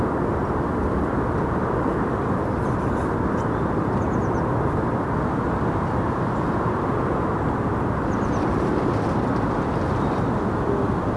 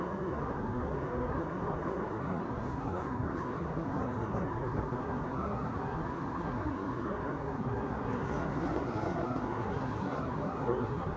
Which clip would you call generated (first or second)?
second